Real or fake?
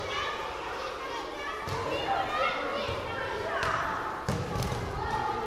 real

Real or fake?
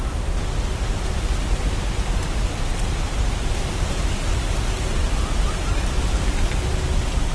real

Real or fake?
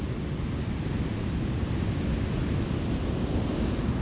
real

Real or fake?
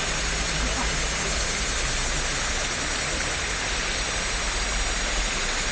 real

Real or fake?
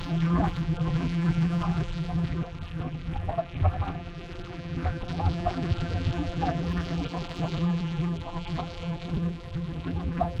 fake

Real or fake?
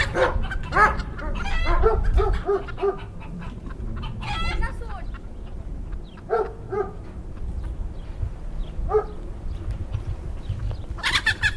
real